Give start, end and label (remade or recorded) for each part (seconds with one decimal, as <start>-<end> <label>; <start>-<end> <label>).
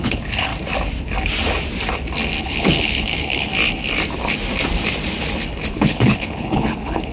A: 0.0-0.5 remade; 0.5-2.4 recorded; 2.4-3.5 remade; 3.5-5.7 recorded; 5.7-7.1 remade